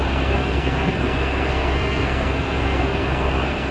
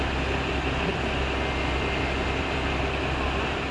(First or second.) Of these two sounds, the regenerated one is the first